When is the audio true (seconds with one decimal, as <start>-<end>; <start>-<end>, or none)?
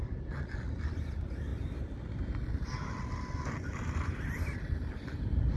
0.0-5.6